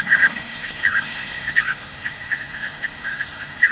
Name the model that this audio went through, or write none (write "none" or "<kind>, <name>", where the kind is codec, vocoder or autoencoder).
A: codec, SNAC